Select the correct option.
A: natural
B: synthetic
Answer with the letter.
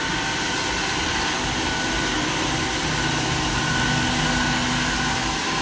A